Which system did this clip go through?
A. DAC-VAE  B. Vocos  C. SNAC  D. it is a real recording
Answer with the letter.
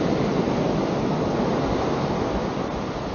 D